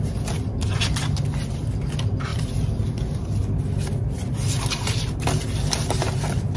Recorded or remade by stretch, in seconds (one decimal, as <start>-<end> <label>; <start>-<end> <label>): 0.0-6.6 recorded

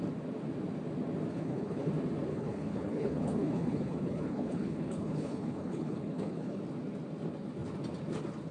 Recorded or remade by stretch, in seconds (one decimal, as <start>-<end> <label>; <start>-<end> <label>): 0.0-1.3 recorded; 1.3-1.9 remade; 1.9-2.3 recorded; 2.3-6.6 remade; 6.6-8.5 recorded

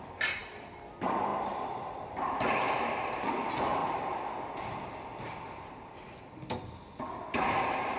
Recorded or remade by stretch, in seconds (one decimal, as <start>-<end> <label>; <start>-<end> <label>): 0.0-8.0 recorded

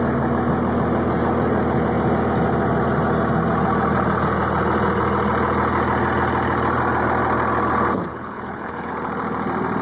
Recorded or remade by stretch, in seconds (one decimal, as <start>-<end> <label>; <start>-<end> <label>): 0.0-8.1 recorded; 8.1-8.9 remade; 8.9-9.8 recorded

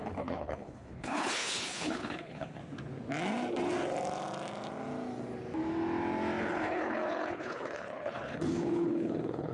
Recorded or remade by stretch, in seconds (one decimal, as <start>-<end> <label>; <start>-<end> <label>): 0.0-2.6 remade; 2.6-6.4 recorded; 6.4-9.5 remade